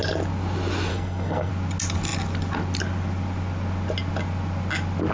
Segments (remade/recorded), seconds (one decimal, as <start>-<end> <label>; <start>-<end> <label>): 0.0-0.9 recorded; 0.9-1.5 remade; 1.5-5.1 recorded